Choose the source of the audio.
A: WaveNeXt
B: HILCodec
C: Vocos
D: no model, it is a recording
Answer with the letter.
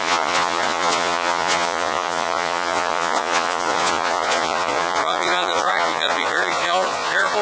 C